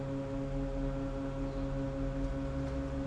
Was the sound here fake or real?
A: real